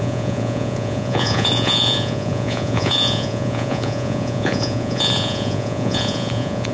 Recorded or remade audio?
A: remade